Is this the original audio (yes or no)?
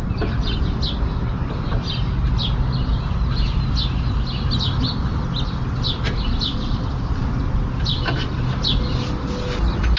yes